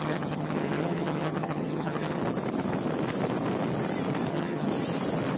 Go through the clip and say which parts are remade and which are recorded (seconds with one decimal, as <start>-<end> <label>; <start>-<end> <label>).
0.0-2.2 remade; 2.2-4.3 recorded; 4.3-4.7 remade; 4.7-5.4 recorded